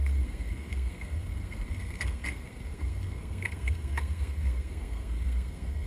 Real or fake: fake